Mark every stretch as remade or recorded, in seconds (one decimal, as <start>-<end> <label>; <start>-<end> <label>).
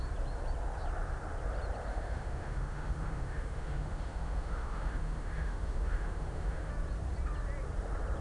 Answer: 0.0-1.9 recorded; 1.9-6.7 remade; 6.7-8.2 recorded